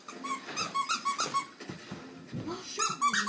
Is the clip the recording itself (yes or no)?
yes